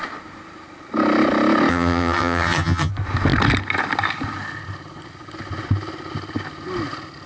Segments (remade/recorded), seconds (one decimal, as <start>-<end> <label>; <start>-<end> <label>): 0.0-1.7 recorded; 1.7-2.9 remade; 2.9-7.3 recorded